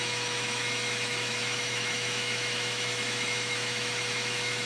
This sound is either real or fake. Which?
fake